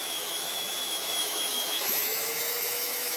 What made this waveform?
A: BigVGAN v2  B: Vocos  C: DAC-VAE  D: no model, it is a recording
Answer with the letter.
C